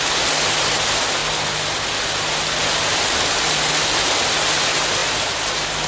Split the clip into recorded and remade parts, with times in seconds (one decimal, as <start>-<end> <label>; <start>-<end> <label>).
0.0-5.9 recorded